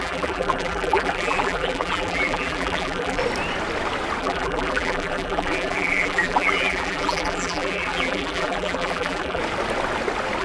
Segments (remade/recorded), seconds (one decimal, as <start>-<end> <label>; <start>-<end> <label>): 0.0-3.2 remade; 3.2-4.2 recorded; 4.2-9.4 remade; 9.4-10.4 recorded